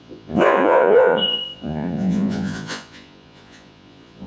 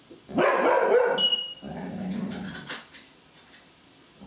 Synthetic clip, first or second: first